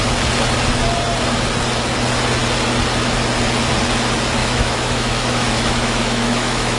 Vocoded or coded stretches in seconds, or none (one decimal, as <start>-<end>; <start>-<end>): 4.4-6.8